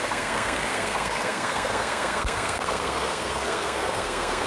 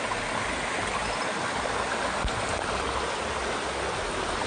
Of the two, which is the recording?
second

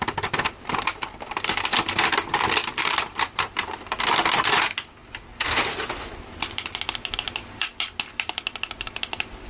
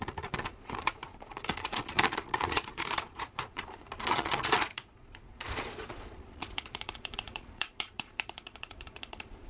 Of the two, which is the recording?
first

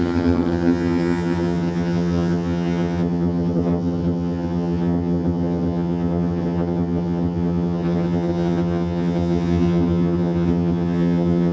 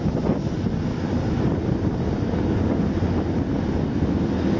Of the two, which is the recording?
second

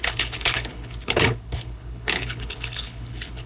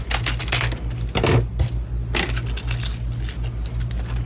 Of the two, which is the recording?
second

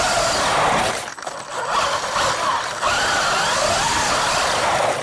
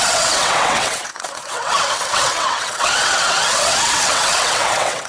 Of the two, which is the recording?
first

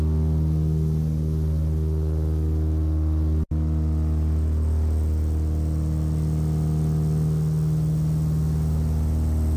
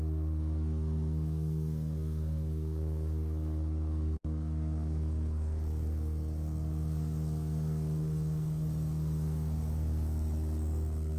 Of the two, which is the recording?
first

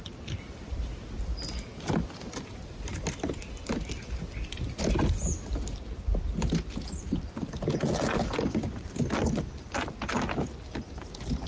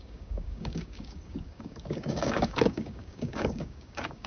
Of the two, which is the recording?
first